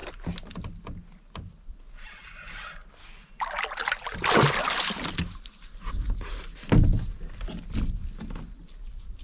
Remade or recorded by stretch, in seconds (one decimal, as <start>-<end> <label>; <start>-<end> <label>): 0.0-9.2 recorded